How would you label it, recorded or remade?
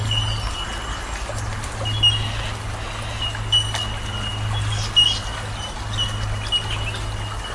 recorded